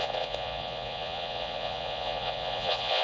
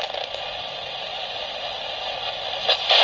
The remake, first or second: first